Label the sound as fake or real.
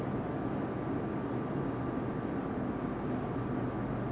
real